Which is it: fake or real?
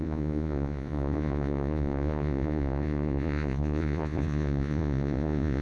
fake